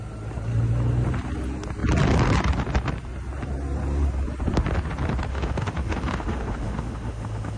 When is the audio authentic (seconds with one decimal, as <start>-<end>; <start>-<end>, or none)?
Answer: 0.0-5.3